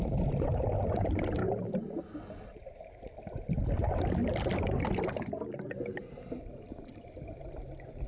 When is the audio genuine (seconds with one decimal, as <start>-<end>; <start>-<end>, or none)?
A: 0.0-8.1